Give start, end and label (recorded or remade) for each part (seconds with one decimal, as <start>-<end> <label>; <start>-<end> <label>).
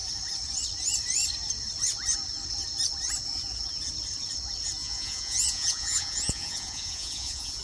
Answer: 0.0-4.8 recorded; 4.8-7.6 remade